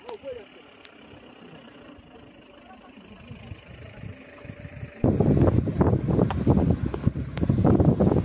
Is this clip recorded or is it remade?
recorded